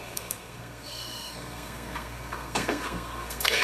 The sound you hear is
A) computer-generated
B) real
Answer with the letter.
A